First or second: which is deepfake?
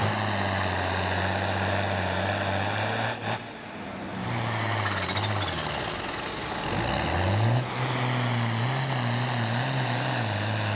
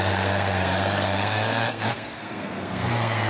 second